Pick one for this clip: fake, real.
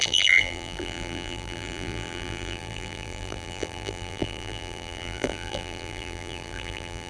fake